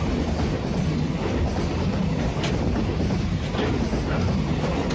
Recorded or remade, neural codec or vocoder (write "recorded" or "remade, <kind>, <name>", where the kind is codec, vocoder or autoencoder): recorded